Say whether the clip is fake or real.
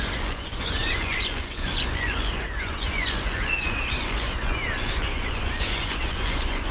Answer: fake